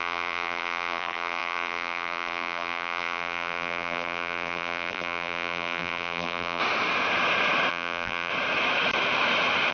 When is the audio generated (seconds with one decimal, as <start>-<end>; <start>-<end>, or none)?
0.0-6.6; 7.7-8.3